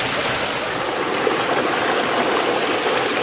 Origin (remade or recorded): recorded